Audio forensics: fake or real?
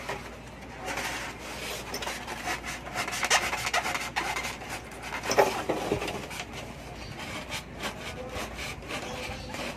real